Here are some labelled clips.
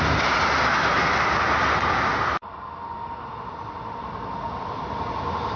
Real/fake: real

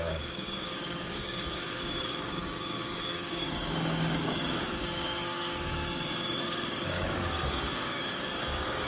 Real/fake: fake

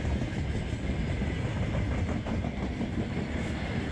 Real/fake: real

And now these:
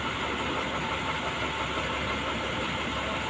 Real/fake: real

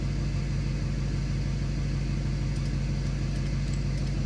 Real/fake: real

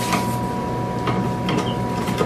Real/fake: real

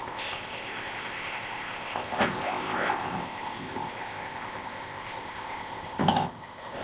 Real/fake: fake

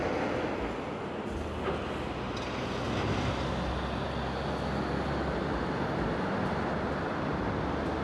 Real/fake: real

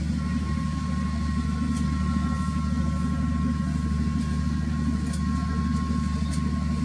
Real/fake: real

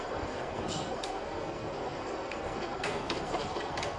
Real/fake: fake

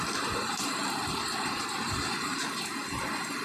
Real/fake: real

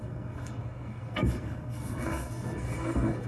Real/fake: fake